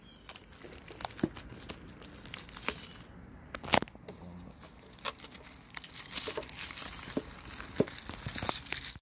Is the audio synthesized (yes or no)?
no